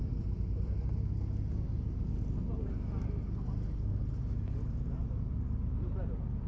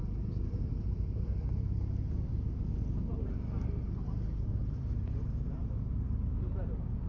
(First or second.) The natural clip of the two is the first